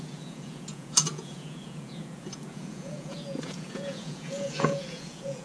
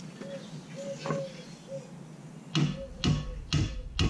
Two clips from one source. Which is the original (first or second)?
second